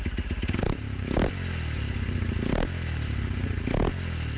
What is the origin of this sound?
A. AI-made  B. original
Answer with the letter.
B